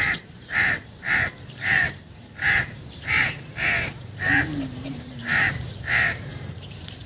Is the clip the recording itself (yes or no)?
no